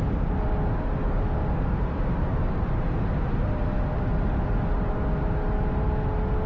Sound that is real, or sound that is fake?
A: real